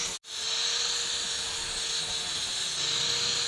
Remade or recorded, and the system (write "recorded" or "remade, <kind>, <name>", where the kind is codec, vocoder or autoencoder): recorded